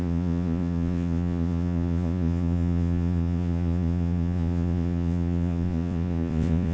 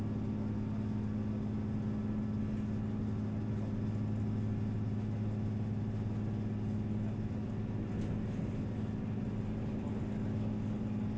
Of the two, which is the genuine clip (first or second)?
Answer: second